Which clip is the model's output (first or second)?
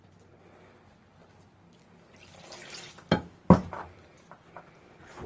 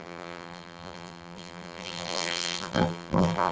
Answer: second